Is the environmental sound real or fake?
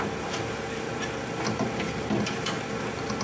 real